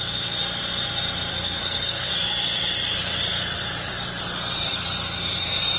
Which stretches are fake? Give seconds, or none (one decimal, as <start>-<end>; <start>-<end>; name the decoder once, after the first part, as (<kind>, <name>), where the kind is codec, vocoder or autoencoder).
1.3-2.1 (codec, SNAC)